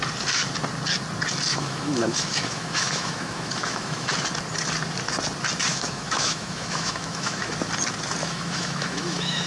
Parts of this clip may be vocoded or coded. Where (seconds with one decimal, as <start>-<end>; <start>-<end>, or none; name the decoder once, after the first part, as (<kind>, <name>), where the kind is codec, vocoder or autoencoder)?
1.5-4.1 (autoencoder, DAC-VAE); 5.7-7.5; 8.2-9.5